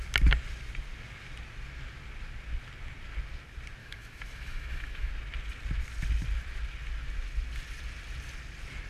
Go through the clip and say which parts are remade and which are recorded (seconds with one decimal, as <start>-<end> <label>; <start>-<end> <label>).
0.0-3.8 recorded; 3.8-5.1 remade; 5.1-8.9 recorded